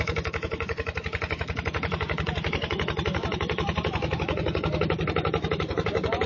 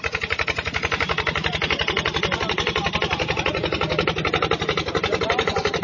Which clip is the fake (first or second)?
first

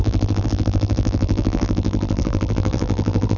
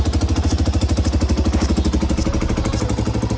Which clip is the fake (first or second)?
first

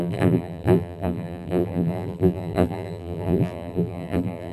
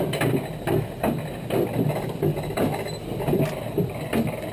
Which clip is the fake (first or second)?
first